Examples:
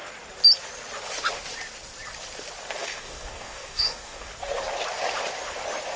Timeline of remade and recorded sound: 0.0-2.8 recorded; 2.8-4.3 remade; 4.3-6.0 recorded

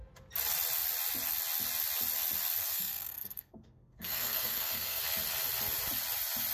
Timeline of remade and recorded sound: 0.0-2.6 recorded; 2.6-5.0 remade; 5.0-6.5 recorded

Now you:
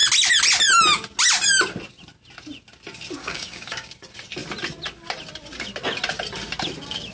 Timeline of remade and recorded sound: 0.0-3.2 recorded; 3.2-3.9 remade; 3.9-7.1 recorded

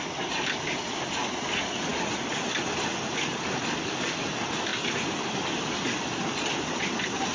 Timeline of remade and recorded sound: 0.0-7.3 recorded

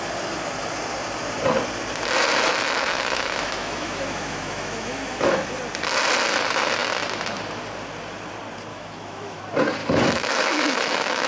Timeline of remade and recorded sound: 0.0-2.5 recorded; 2.5-5.6 remade; 5.6-8.7 recorded; 8.7-9.4 remade; 9.4-9.8 recorded; 9.8-11.3 remade